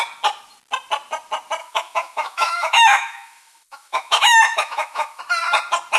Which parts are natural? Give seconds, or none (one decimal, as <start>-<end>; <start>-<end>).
0.0-1.6; 5.2-6.0

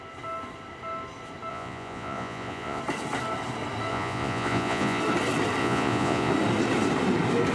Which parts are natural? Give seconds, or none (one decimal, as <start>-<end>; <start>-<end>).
0.0-1.5; 2.8-3.9; 5.0-5.6; 6.3-7.5

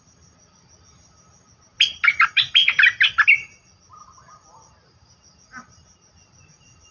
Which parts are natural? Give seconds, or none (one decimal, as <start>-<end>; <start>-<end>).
0.0-6.9

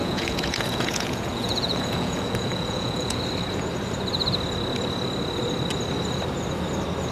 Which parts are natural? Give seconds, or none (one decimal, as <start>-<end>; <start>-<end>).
3.2-7.1